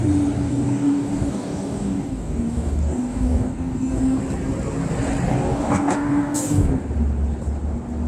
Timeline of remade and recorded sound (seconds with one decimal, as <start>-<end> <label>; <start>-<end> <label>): 0.0-0.4 recorded; 0.4-4.2 remade; 4.2-5.3 recorded; 5.3-6.7 remade; 6.7-8.1 recorded